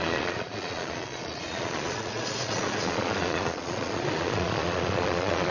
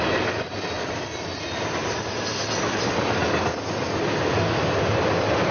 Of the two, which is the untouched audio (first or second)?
second